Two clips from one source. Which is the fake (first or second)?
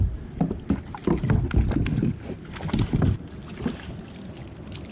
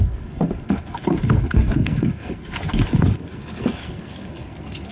second